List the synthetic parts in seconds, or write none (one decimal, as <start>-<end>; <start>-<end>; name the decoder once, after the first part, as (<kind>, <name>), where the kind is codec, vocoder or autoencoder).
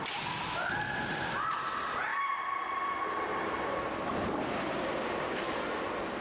none